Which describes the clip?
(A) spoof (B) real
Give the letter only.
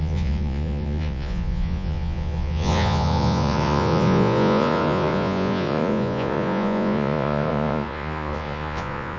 A